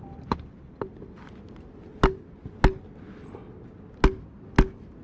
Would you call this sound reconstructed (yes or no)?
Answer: no